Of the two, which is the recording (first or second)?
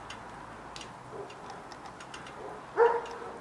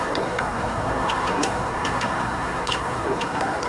first